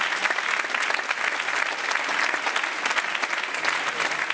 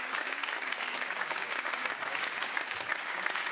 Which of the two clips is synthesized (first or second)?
second